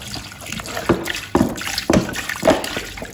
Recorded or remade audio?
recorded